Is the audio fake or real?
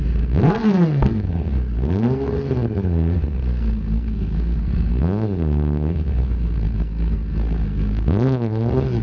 fake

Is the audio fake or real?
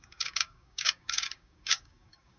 fake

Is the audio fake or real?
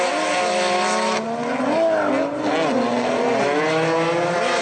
real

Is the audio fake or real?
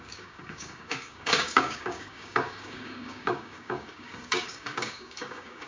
fake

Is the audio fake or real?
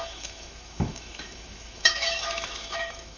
fake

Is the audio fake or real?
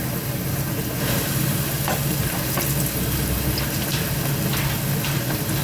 real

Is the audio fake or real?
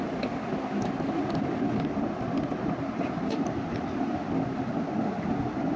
real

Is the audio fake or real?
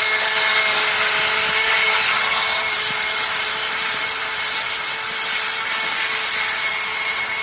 real